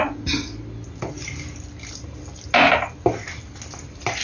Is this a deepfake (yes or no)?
no